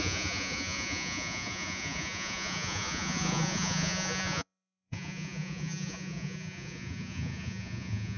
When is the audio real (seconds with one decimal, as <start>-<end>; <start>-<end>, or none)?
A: none